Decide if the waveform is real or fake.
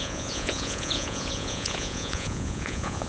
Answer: fake